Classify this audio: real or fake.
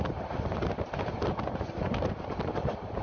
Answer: fake